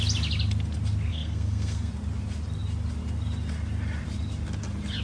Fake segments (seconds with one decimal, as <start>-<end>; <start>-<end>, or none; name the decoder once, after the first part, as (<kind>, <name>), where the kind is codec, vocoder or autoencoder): 1.1-1.9 (codec, SNAC)